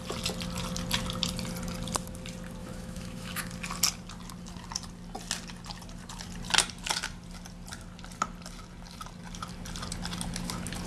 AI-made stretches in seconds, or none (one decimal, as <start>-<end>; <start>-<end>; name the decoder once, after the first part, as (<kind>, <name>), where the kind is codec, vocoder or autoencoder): 2.6-3.4 (autoencoder, DAC-VAE)